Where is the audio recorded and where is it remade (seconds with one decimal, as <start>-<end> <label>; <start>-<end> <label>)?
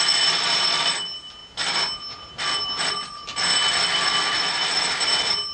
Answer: 0.0-1.4 remade; 1.4-2.9 recorded; 2.9-3.3 remade; 3.3-3.8 recorded; 3.8-5.5 remade